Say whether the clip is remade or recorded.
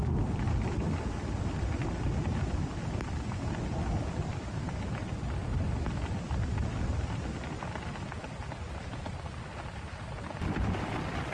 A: recorded